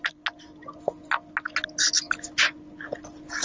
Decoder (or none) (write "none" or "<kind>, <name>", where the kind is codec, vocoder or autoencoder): none